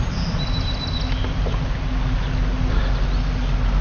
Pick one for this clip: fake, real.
real